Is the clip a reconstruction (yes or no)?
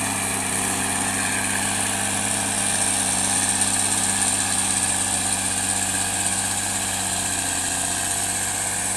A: no